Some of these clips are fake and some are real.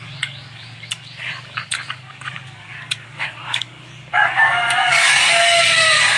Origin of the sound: fake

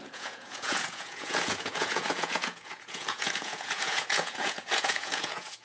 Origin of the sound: fake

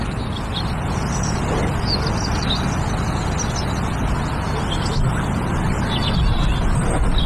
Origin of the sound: real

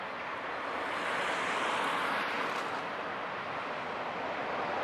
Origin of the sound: real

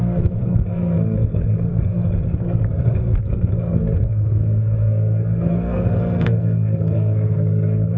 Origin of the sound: fake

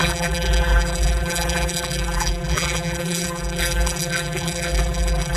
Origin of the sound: fake